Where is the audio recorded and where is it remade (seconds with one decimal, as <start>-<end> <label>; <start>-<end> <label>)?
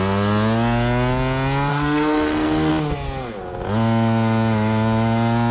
0.0-1.7 recorded; 1.7-2.7 remade; 2.7-5.5 recorded